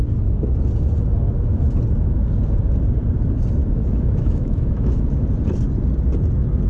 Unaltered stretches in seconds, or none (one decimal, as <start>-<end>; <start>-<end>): 0.0-3.6; 5.0-6.7